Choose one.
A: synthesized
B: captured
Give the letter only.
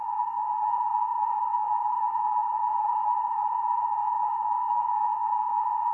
A